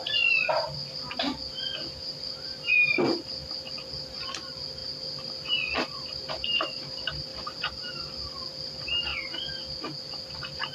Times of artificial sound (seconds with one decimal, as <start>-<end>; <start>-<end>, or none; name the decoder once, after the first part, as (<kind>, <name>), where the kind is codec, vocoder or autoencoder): 7.3-7.9 (vocoder, BigVGAN v2)

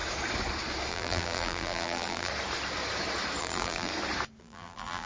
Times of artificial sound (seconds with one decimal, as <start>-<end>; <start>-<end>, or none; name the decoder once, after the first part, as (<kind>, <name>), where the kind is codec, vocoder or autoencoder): 0.9-2.3 (vocoder, BigVGAN v2); 3.4-3.9; 4.4-5.1

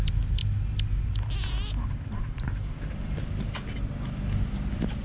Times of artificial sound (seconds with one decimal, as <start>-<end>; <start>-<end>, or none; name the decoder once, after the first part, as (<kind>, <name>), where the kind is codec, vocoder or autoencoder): none